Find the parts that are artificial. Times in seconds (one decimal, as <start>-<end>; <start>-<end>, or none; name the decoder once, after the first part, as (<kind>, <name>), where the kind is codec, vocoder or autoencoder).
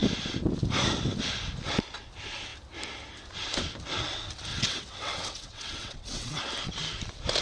4.5-6.4 (vocoder, WaveNeXt)